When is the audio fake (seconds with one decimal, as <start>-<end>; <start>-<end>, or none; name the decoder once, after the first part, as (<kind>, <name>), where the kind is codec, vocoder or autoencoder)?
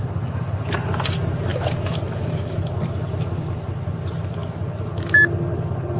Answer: none